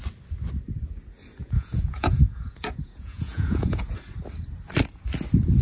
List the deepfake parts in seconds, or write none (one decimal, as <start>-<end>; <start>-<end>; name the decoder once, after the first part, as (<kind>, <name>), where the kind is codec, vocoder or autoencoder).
1.4-3.9 (vocoder, Vocos)